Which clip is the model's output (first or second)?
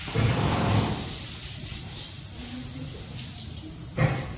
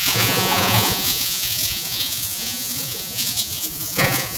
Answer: second